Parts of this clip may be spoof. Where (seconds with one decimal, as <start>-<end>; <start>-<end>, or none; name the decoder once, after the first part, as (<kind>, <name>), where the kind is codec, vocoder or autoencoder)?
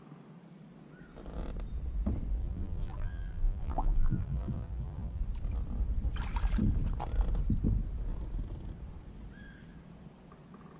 2.4-5.2 (vocoder, BigVGAN v2)